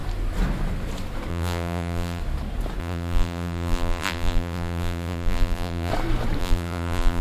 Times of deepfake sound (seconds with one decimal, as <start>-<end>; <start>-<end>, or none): 1.3-2.2; 2.8-5.9; 6.4-7.2